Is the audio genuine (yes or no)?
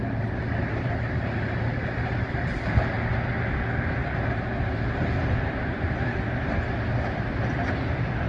yes